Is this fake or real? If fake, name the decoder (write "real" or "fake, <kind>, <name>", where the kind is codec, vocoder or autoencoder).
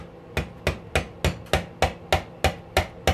real